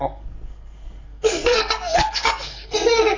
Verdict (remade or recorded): remade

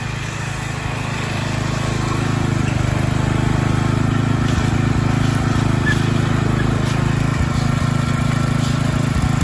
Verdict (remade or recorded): recorded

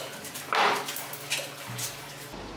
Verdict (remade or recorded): recorded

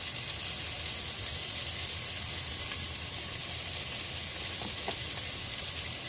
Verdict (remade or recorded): recorded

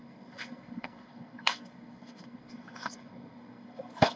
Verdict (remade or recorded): remade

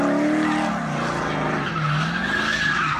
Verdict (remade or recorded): recorded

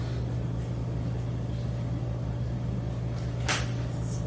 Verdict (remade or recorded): recorded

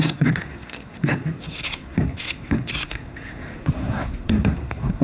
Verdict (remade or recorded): remade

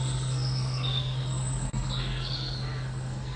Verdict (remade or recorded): remade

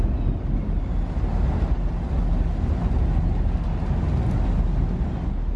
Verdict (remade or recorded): recorded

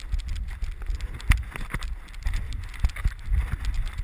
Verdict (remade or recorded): recorded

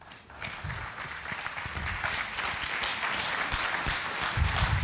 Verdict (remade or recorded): recorded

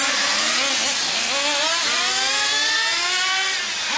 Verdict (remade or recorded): recorded